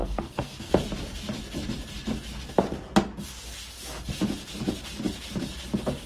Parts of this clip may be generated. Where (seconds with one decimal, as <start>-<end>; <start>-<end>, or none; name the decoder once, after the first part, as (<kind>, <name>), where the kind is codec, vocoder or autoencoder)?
0.0-0.7 (codec, SNAC)